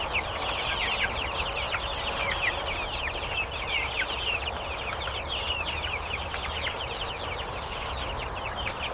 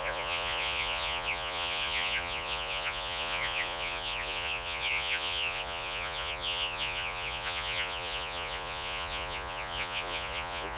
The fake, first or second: second